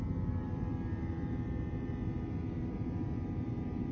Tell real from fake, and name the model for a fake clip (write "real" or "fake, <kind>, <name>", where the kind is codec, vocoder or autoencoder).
fake, vocoder, BigVGAN v2